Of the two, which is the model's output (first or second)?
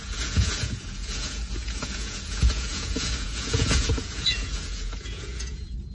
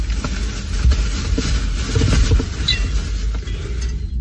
first